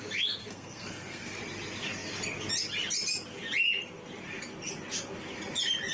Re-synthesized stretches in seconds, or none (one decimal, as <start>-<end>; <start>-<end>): 0.4-1.4